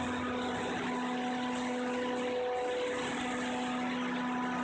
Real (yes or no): yes